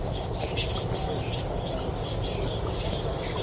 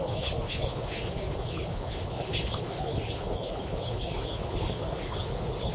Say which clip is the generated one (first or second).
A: second